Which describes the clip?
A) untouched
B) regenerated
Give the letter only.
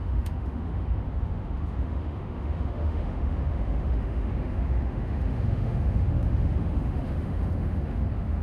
B